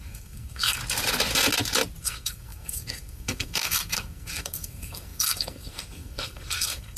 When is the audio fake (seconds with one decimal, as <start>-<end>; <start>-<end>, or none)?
0.0-0.8; 2.0-7.0